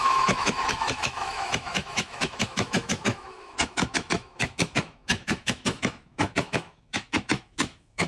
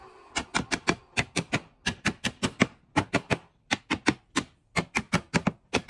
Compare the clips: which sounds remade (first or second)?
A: first